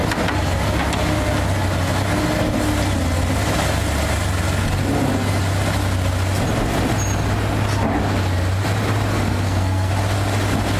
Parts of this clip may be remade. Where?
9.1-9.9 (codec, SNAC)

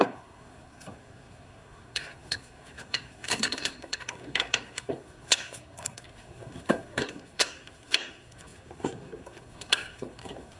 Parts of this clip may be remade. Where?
0.0-10.6 (codec, SNAC)

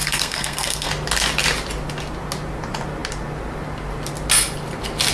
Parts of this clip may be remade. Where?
0.0-0.9 (codec, SNAC)